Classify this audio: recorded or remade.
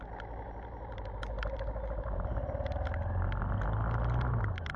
recorded